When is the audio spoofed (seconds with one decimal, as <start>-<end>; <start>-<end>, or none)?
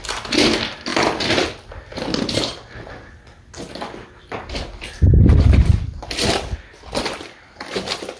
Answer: none